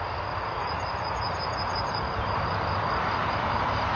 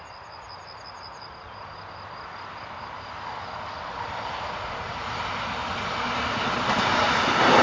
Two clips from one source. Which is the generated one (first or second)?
first